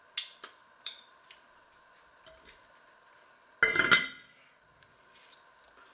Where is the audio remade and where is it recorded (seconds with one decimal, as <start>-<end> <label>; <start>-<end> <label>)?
0.0-0.6 recorded; 0.6-1.1 remade; 1.1-5.9 recorded